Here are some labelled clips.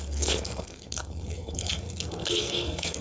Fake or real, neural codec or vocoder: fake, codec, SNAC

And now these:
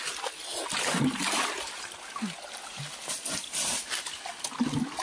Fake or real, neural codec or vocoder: real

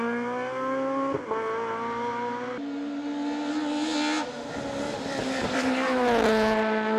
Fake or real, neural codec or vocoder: real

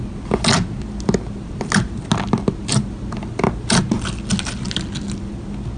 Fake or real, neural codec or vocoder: real